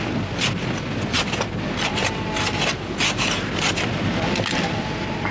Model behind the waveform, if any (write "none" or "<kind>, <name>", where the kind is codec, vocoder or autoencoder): none